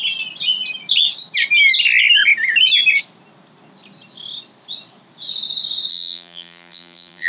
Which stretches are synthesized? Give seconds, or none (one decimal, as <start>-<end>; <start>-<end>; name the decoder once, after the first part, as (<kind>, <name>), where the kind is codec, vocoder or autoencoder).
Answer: 5.9-7.3 (vocoder, BigVGAN v2)